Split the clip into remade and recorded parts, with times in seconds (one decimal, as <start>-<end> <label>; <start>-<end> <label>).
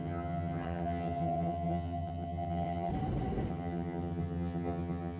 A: 0.0-2.9 remade; 2.9-3.5 recorded; 3.5-5.2 remade